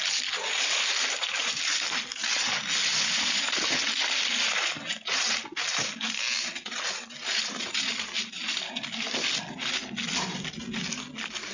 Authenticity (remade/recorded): recorded